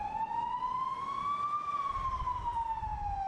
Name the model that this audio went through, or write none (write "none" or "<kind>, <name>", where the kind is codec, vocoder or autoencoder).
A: none